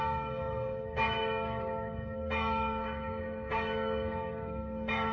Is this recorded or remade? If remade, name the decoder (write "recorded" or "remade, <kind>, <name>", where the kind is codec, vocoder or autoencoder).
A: remade, codec, DAC